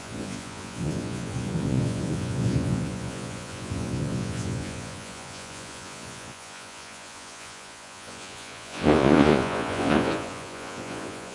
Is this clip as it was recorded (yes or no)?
no